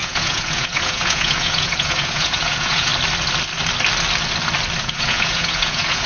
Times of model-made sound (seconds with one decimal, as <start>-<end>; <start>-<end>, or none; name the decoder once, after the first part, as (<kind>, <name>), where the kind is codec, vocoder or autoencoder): 0.0-2.9 (vocoder, Vocos); 4.8-6.1